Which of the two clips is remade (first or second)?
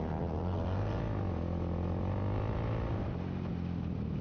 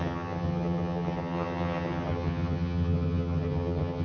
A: second